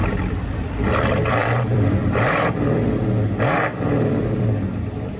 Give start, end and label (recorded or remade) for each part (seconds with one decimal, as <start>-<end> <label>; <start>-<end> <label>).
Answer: 0.0-0.7 remade; 0.7-1.4 recorded; 1.4-3.0 remade; 3.0-3.7 recorded; 3.7-5.2 remade